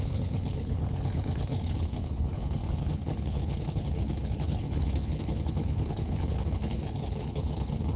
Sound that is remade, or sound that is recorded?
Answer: remade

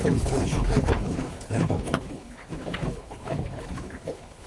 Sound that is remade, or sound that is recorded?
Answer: remade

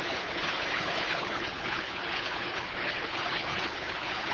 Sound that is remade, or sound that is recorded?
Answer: remade